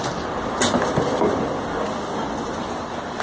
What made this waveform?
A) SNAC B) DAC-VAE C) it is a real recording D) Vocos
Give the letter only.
C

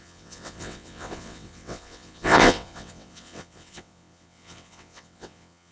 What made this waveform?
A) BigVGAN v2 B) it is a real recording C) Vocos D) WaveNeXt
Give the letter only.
D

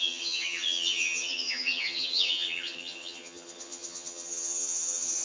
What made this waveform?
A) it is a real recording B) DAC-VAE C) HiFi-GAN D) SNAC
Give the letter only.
C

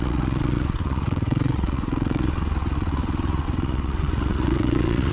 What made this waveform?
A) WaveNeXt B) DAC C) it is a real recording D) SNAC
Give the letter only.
A